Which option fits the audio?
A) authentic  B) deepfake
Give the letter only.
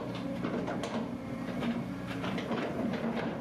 B